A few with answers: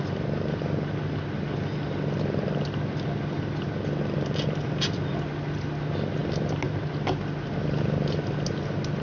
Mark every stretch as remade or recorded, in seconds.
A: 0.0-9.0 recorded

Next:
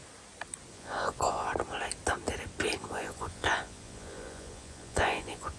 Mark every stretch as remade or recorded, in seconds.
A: 0.0-0.7 recorded; 0.7-1.5 remade; 1.5-2.8 recorded; 2.8-5.6 remade

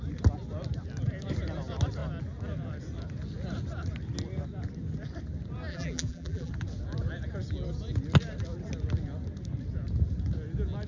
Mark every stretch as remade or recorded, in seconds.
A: 0.0-5.7 recorded; 5.7-6.5 remade; 6.5-10.9 recorded